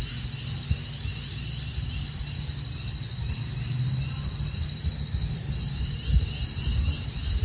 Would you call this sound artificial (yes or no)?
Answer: no